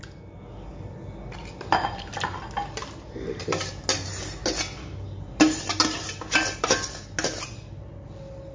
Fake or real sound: real